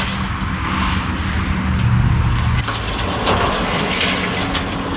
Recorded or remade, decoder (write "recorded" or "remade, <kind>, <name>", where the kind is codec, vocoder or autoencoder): recorded